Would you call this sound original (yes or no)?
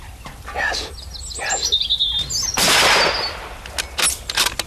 yes